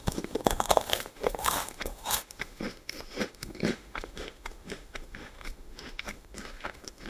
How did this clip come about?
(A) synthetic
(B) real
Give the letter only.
A